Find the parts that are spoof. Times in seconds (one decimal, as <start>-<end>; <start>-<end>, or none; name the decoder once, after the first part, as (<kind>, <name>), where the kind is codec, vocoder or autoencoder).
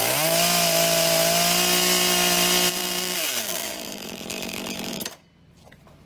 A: 2.7-5.0 (vocoder, BigVGAN v2)